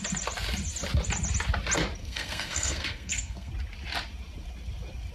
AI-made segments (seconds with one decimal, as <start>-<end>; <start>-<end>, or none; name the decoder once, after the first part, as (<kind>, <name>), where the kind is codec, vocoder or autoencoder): 2.0-3.5 (codec, SNAC)